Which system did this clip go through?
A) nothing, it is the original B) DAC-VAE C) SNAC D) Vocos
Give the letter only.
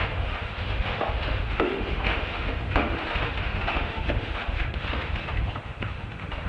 B